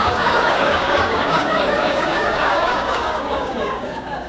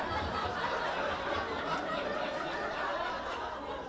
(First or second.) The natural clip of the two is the second